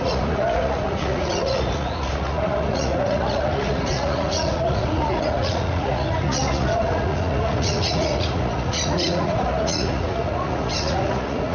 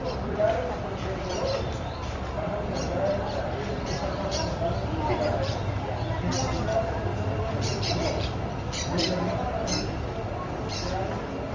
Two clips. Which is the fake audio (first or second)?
first